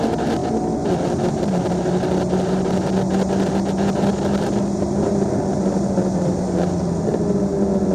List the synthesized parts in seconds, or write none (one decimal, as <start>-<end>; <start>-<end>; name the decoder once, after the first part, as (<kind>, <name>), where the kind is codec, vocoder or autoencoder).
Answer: none